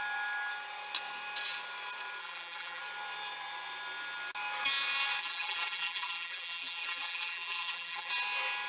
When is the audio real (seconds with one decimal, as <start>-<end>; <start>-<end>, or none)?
0.0-2.2; 2.8-5.2; 8.1-8.7